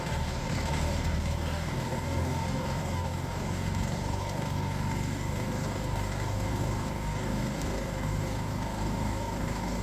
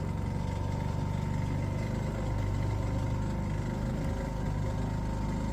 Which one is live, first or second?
second